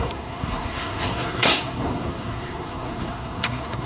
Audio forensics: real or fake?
fake